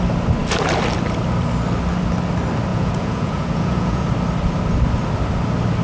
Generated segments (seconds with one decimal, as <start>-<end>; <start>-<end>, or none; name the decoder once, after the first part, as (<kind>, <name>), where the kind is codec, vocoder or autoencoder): 2.7-4.1 (vocoder, Vocos)

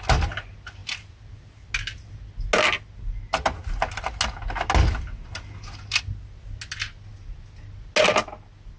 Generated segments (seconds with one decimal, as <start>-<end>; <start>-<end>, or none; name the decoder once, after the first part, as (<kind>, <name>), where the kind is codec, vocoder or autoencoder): none